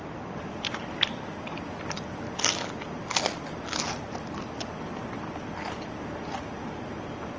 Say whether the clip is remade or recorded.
recorded